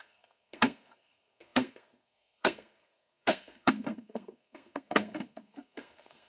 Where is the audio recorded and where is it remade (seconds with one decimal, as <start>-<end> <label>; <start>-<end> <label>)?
0.0-6.3 remade